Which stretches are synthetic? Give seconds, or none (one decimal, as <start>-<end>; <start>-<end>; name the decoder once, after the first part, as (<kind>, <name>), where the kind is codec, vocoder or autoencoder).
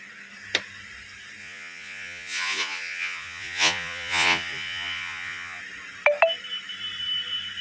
1.4-5.6 (vocoder, Vocos)